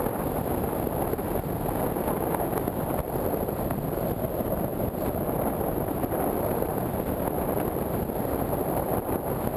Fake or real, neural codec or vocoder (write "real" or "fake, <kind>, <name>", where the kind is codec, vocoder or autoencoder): real